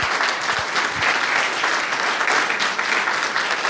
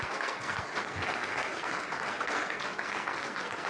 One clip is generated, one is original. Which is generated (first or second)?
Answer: second